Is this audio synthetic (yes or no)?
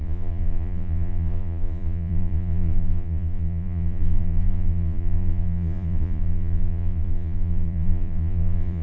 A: yes